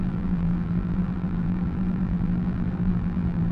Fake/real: fake